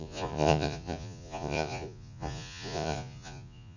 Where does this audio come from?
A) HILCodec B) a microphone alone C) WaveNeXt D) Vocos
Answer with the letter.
D